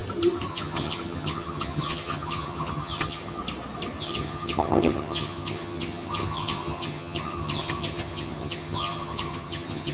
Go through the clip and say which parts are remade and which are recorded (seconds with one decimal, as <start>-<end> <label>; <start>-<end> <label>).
0.0-0.5 recorded; 0.5-3.4 remade; 3.4-4.0 recorded; 4.0-9.9 remade